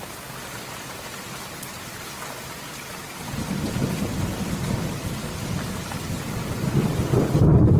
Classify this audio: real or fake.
fake